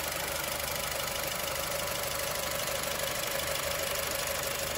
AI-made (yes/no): no